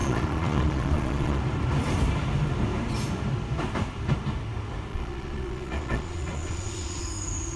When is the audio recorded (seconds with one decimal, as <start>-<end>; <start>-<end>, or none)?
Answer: 1.4-4.9; 7.0-7.6